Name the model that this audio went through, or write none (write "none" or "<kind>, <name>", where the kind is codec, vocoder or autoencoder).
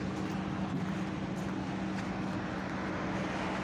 none